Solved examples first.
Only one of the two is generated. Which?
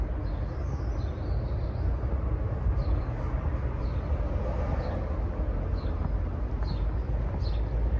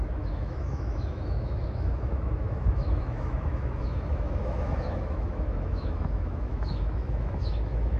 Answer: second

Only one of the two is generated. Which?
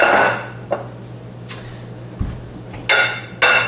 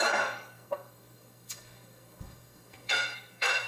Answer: second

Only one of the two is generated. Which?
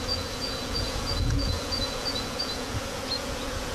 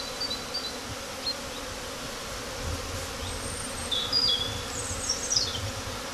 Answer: first